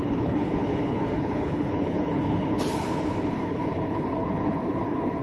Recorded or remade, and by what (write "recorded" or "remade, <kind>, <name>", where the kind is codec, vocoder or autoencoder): remade, codec, HILCodec